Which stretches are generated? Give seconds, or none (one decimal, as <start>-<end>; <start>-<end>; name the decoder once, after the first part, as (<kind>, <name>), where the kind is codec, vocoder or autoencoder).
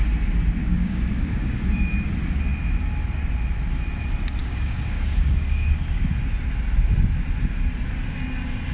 0.6-1.8 (codec, DAC); 4.4-6.1